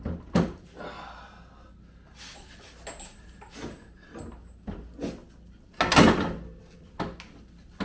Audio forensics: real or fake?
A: real